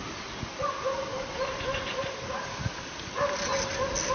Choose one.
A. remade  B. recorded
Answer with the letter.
B